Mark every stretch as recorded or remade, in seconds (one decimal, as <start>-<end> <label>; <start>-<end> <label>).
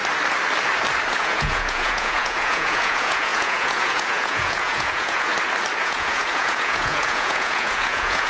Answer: 0.0-1.1 recorded; 1.1-5.3 remade; 5.3-5.8 recorded; 5.8-8.3 remade